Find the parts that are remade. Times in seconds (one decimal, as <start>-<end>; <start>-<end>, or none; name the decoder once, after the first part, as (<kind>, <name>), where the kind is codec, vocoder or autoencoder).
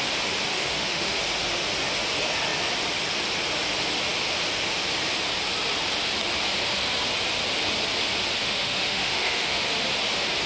0.5-1.2 (autoencoder, DAC-VAE); 8.4-9.6